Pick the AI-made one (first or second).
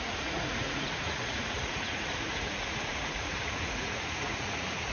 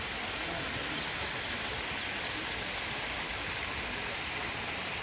first